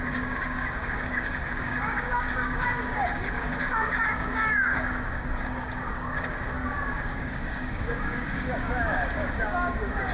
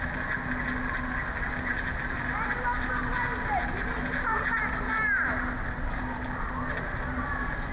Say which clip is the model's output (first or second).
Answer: first